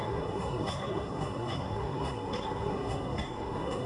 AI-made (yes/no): yes